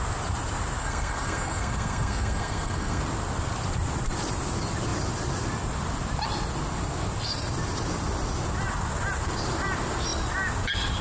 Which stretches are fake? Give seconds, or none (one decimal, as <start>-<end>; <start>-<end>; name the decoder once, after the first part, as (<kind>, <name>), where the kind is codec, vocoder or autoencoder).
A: 0.8-3.0 (codec, SNAC)